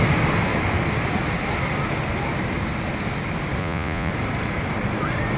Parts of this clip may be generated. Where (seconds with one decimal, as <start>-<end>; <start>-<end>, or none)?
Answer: 3.6-4.1